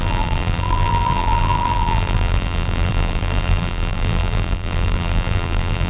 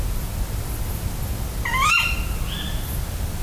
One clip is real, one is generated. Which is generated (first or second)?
first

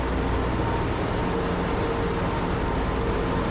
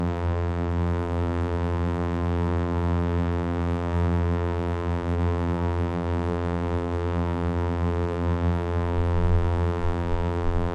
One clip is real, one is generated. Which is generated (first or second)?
second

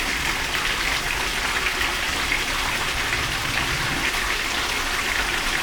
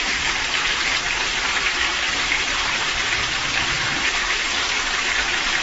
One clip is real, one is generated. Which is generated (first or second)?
second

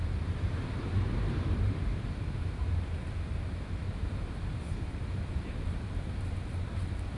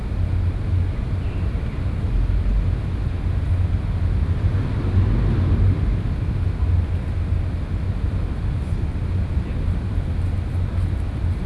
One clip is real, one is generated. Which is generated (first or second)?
first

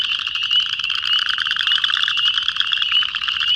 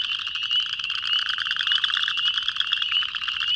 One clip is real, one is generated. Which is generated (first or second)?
first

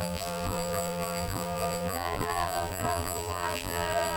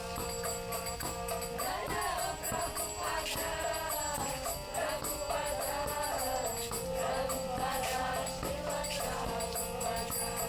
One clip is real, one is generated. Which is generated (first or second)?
first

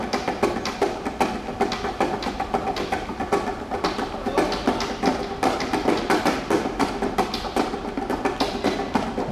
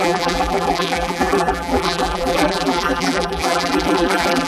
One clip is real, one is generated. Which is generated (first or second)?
second